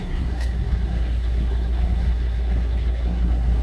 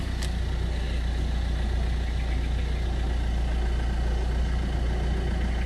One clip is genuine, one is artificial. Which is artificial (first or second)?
first